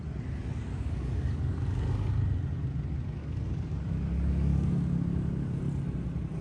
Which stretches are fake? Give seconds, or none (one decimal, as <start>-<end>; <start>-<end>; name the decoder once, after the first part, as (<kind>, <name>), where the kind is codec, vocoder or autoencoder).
0.6-2.1 (codec, DAC); 3.2-5.6